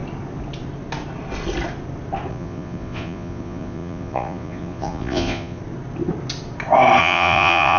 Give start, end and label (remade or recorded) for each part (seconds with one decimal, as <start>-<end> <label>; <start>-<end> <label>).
0.0-2.3 recorded; 2.3-5.6 remade; 5.6-7.0 recorded; 7.0-7.8 remade